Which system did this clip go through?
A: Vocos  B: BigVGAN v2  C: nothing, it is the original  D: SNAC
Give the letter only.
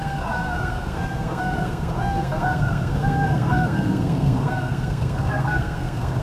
D